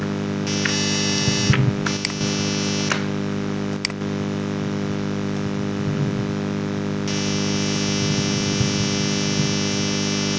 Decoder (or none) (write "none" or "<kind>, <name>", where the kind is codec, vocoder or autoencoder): none